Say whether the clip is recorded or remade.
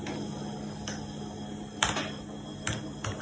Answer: recorded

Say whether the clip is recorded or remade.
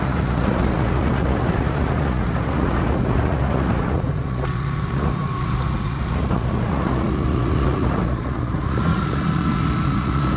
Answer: remade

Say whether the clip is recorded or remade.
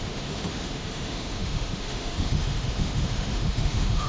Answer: remade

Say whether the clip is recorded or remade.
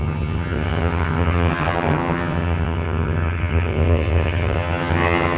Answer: remade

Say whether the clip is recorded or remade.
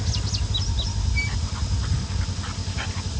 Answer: recorded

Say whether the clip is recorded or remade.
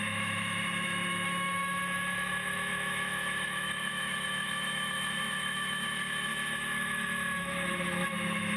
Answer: remade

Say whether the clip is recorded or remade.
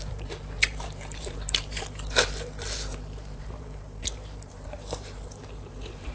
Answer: remade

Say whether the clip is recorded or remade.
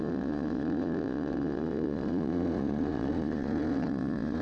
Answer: remade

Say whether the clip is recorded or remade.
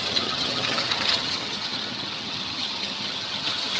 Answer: remade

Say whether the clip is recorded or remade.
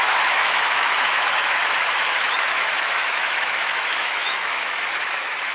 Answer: remade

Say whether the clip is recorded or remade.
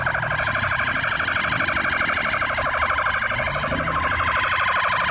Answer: recorded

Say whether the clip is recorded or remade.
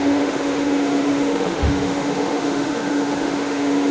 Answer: remade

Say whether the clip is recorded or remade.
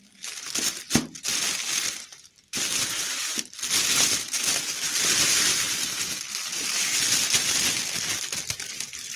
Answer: recorded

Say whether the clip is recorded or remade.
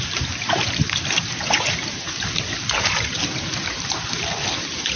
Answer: remade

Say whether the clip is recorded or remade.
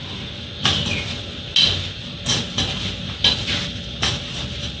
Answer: recorded